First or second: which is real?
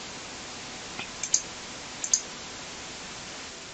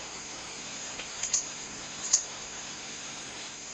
first